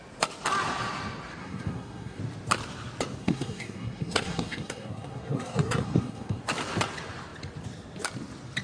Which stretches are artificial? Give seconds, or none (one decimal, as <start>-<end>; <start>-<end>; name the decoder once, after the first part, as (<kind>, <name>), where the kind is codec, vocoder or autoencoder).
1.4-2.2 (codec, SNAC); 3.2-6.4